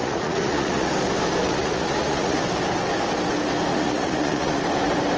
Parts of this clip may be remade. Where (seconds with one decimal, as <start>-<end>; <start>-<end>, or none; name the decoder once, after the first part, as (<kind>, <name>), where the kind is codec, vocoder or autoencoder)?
0.0-0.9 (vocoder, Vocos); 1.4-2.4; 3.7-4.6